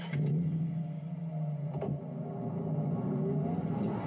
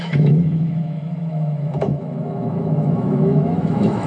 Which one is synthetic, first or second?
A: second